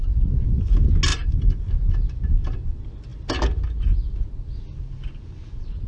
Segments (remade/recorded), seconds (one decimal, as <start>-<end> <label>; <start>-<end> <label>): 0.0-1.1 recorded; 1.1-1.7 remade; 1.7-5.9 recorded